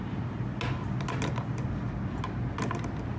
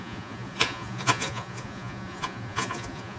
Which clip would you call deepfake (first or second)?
second